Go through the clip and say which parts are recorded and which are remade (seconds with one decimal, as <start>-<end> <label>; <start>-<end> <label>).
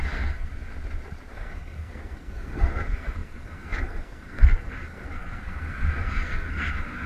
0.0-0.5 remade; 0.5-1.3 recorded; 1.3-7.1 remade